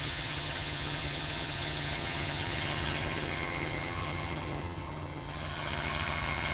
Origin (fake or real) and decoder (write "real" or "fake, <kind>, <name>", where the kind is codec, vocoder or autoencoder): fake, vocoder, HiFi-GAN